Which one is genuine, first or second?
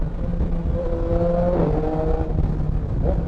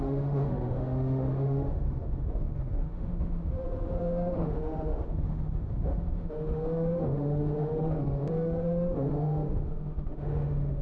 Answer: first